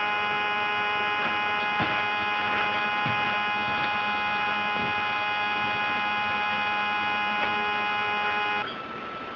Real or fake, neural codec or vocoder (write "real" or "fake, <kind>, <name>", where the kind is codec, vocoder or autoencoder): real